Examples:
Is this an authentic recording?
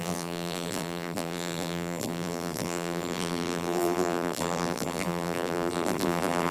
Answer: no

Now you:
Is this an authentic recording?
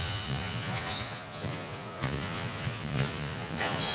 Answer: no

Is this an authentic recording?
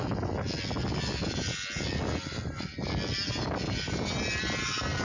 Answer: yes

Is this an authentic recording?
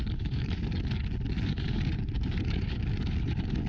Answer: no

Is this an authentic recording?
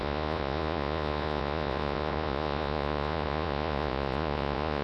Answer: no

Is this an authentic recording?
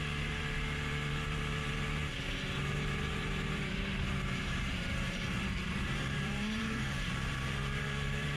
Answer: no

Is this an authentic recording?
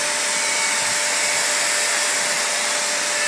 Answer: yes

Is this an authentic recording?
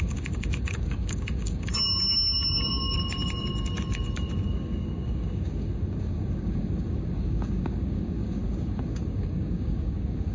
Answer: no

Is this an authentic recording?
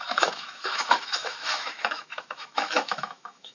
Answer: no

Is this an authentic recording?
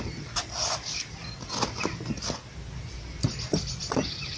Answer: yes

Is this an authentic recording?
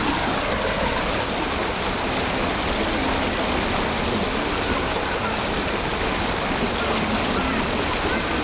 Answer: yes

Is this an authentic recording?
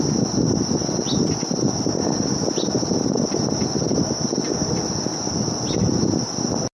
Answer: yes